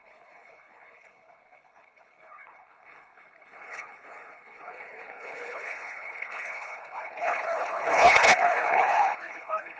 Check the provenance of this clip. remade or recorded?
remade